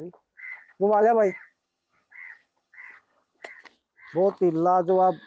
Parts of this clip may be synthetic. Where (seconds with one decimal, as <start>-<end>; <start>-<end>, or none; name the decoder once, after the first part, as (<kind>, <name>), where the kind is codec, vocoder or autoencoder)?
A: 0.4-3.6 (vocoder, HiFi-GAN)